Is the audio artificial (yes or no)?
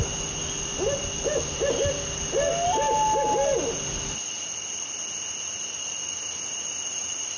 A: no